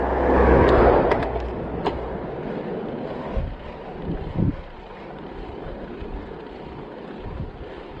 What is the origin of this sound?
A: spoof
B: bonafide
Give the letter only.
B